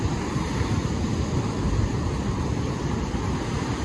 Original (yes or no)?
yes